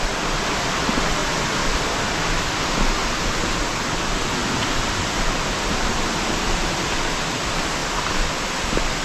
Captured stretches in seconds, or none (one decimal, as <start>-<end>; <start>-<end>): 0.0-1.2; 2.2-9.0